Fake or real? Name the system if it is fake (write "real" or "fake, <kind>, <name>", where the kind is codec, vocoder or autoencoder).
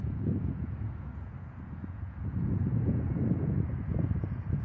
fake, vocoder, Vocos